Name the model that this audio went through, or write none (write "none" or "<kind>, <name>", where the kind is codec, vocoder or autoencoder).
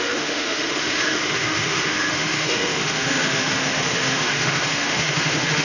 autoencoder, DAC-VAE